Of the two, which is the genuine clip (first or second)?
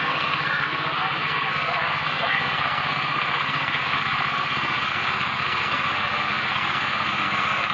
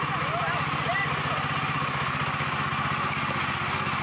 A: second